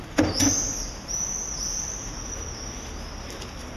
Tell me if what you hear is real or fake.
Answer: real